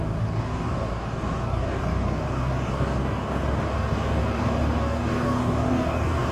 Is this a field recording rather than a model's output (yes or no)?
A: no